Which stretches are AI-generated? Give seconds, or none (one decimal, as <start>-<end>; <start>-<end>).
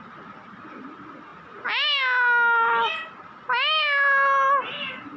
none